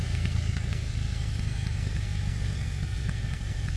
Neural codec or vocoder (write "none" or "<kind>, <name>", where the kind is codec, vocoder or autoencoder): codec, SNAC